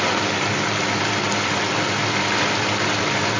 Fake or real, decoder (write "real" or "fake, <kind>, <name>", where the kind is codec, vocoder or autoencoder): real